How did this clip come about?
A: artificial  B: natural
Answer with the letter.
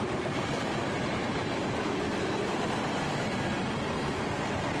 B